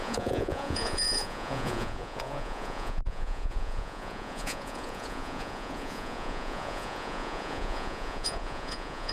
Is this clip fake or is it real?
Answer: fake